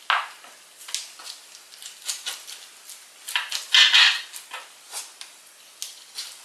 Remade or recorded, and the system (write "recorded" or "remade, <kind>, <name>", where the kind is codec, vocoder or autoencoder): recorded